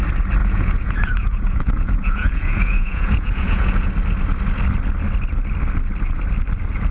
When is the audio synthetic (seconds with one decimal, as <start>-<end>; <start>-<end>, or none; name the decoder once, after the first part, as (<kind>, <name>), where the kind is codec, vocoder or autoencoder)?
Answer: 0.4-3.9 (vocoder, Vocos)